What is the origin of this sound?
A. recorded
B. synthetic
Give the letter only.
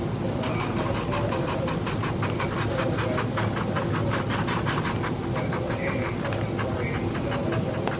A